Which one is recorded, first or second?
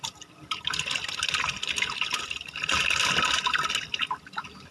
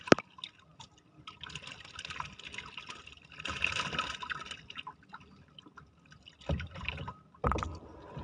second